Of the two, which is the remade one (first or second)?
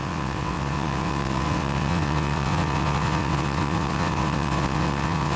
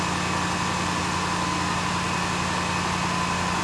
first